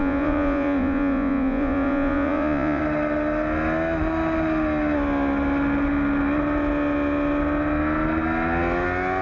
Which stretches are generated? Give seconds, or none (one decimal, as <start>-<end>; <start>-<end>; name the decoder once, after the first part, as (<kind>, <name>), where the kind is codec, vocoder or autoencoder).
0.0-2.8 (vocoder, Vocos)